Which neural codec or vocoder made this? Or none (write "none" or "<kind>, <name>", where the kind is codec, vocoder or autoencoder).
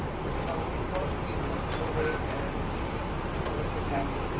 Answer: none